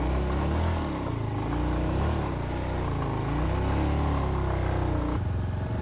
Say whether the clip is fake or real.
real